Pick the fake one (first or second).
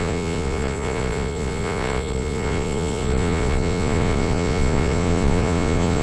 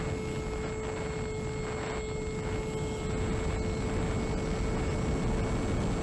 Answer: first